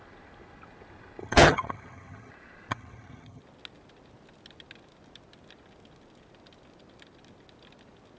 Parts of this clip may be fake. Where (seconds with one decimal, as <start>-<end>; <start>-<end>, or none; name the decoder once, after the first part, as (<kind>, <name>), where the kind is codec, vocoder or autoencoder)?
1.2-2.3 (vocoder, HiFi-GAN); 2.7-3.4